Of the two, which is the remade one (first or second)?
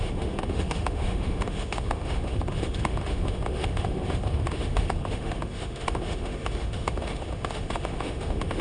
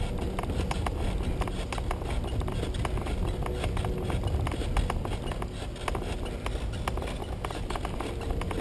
first